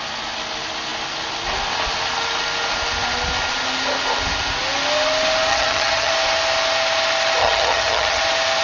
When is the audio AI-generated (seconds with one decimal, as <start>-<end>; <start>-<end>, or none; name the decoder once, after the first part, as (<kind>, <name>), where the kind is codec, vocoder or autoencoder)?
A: 5.5-6.1 (vocoder, HiFi-GAN); 7.4-8.2

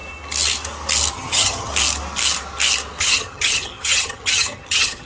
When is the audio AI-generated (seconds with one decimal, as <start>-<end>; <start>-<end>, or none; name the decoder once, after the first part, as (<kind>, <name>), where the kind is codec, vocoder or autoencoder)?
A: 1.1-1.7 (vocoder, HiFi-GAN); 3.0-5.1

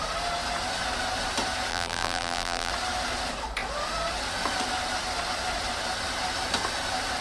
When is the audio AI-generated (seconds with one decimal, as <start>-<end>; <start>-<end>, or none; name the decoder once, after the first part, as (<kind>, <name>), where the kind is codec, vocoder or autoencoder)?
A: 1.7-2.7 (vocoder, BigVGAN v2)

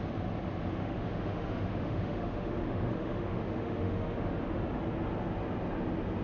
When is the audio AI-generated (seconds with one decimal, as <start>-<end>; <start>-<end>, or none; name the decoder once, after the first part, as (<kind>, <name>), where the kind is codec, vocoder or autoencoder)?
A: 0.8-4.5 (autoencoder, DAC-VAE)

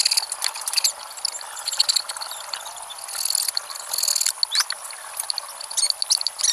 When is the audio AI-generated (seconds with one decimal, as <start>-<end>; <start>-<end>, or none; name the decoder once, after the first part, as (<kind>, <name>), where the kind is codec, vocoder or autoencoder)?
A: none

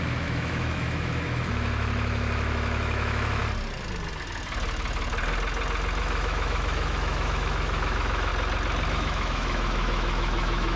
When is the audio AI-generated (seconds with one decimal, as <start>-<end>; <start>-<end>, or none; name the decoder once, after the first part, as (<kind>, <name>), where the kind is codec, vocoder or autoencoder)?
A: 0.0-3.4 (autoencoder, DAC-VAE); 6.0-8.3; 8.9-10.8

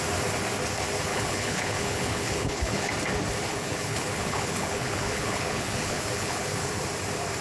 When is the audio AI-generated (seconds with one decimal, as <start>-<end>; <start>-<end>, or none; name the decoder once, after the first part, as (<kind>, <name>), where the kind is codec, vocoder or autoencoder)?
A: 1.1-2.9 (codec, HILCodec); 3.5-6.8